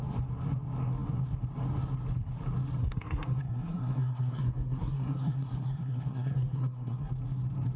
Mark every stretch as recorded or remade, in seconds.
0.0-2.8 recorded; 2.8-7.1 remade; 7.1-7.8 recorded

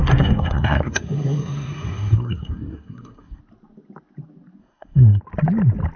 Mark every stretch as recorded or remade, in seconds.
0.0-3.4 remade; 3.4-4.6 recorded; 4.6-5.2 remade; 5.2-6.0 recorded